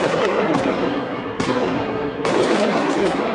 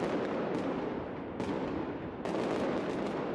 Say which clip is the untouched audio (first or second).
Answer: second